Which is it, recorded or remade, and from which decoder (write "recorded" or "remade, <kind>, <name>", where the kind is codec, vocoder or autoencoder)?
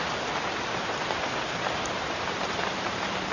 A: remade, vocoder, BigVGAN v2